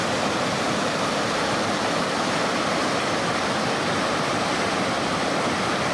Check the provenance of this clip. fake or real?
real